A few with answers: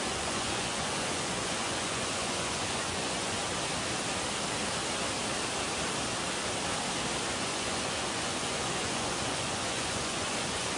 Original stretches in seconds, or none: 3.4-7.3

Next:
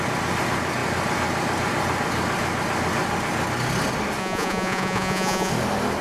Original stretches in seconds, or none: 0.0-4.2; 5.5-6.0

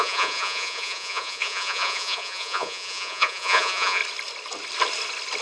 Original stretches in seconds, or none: 4.0-5.4